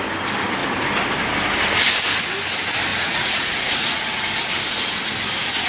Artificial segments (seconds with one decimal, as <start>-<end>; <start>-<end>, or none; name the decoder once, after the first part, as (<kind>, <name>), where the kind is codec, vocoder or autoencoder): 2.9-4.0 (vocoder, Vocos)